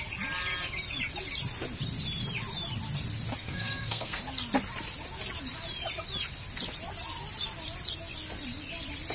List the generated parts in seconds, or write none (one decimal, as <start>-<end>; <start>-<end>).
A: 3.4-4.2